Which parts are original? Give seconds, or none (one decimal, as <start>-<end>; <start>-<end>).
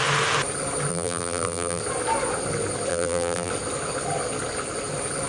0.0-0.9; 1.8-2.9; 3.5-5.3